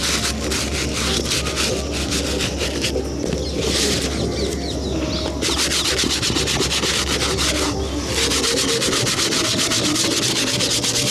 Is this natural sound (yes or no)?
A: yes